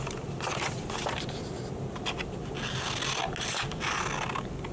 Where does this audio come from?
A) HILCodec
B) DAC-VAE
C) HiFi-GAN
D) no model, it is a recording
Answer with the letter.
D